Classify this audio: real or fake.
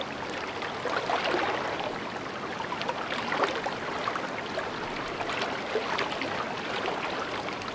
real